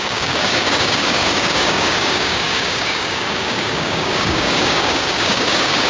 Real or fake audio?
fake